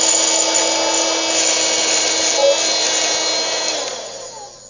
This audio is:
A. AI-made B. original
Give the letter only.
B